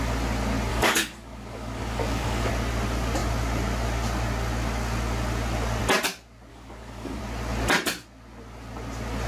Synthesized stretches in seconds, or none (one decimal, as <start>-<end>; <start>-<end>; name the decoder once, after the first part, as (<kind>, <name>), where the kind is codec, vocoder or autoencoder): 0.7-2.5 (codec, DAC); 6.5-7.2